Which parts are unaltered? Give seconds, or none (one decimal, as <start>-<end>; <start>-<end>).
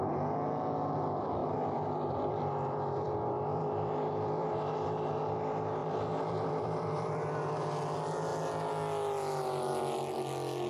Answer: 0.0-1.4; 5.1-5.8; 7.8-10.7